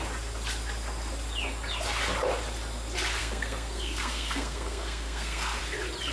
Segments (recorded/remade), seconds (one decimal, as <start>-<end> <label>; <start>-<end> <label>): 0.0-3.2 recorded; 3.2-5.6 remade; 5.6-6.1 recorded